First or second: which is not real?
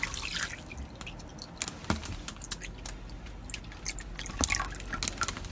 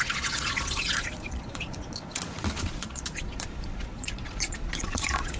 second